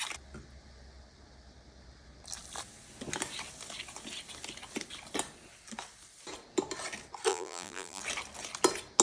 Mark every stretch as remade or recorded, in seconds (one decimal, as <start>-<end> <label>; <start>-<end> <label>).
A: 0.0-7.3 recorded; 7.3-8.0 remade; 8.0-9.0 recorded